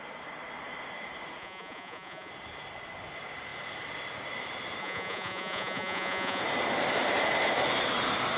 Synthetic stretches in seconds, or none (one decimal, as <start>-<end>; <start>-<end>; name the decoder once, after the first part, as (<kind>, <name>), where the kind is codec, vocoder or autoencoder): 1.4-2.3 (vocoder, Vocos); 4.8-6.4